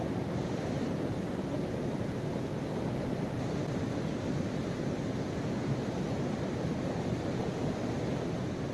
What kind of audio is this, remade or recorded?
recorded